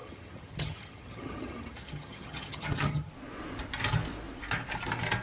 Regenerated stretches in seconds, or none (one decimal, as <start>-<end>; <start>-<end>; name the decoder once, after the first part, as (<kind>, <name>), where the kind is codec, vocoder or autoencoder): 0.0-3.1 (vocoder, HiFi-GAN)